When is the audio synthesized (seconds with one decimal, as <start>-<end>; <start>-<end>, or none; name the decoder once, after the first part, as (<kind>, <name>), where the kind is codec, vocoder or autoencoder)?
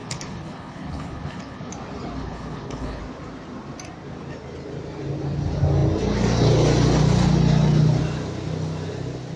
0.0-1.7 (codec, HILCodec); 2.2-3.0